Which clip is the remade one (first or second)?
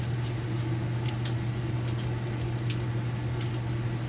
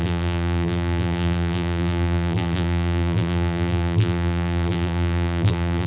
second